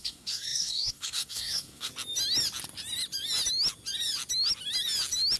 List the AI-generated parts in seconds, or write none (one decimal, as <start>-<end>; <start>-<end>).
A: 0.0-1.9